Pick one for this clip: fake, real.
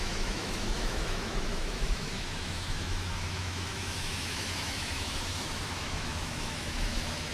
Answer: fake